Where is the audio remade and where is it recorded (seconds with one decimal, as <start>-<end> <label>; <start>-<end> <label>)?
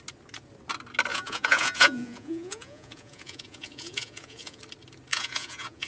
0.0-1.1 recorded; 1.1-4.6 remade; 4.6-5.1 recorded; 5.1-5.9 remade